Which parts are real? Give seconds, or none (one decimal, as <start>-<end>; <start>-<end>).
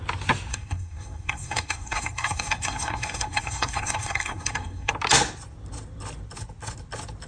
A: 0.0-0.5; 4.9-7.3